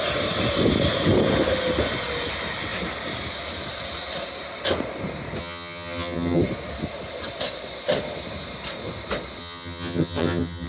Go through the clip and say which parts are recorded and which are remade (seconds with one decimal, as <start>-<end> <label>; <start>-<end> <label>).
0.0-5.4 recorded; 5.4-6.4 remade; 6.4-9.4 recorded; 9.4-10.7 remade